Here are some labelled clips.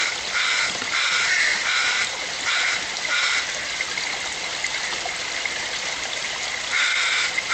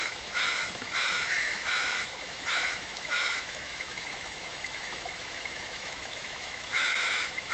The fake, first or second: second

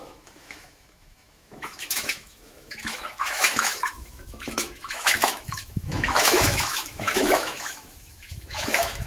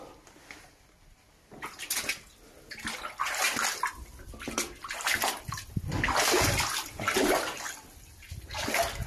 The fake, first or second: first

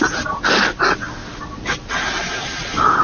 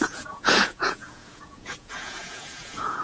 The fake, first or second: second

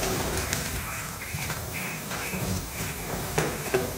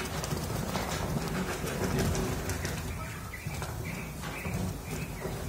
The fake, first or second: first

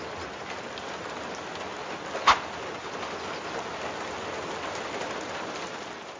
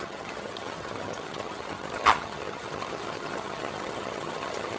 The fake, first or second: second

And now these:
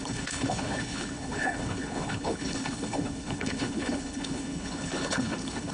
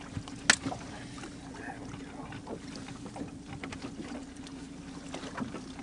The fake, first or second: first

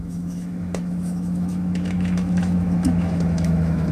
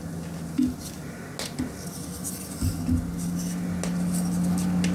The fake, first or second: first